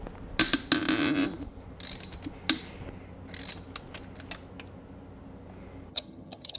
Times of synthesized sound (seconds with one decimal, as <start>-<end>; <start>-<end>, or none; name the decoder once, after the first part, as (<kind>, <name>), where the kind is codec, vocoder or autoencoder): 5.9-6.6 (vocoder, HiFi-GAN)

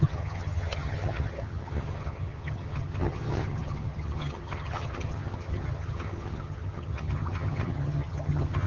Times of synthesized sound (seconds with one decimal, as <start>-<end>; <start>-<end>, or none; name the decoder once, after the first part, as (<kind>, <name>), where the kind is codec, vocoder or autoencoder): 0.0-8.7 (vocoder, HiFi-GAN)

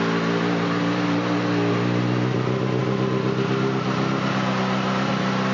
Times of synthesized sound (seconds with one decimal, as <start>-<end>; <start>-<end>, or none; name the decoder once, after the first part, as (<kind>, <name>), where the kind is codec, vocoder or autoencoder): none

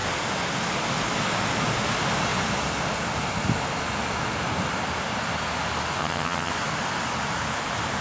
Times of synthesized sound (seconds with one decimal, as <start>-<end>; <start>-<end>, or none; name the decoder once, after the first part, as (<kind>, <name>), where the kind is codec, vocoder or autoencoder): 6.0-6.5 (vocoder, HiFi-GAN)

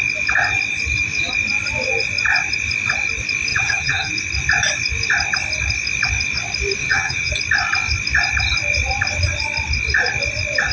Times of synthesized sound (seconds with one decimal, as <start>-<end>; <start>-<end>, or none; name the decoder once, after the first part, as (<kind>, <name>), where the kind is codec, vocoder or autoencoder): 3.5-4.1 (vocoder, HiFi-GAN); 6.8-7.3